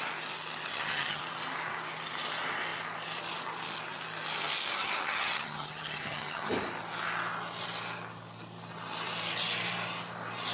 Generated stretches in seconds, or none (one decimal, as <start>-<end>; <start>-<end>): 0.7-1.2; 4.8-6.5